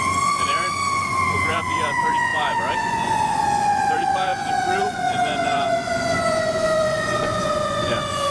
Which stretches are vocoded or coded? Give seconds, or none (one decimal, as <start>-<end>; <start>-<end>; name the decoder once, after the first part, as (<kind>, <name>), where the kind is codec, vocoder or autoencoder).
0.0-8.3 (vocoder, Vocos)